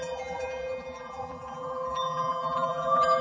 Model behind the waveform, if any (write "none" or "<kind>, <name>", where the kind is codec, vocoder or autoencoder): vocoder, BigVGAN v2